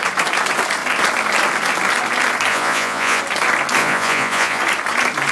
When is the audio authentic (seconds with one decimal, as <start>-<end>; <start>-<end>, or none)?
0.0-2.5; 3.2-3.8; 4.6-5.3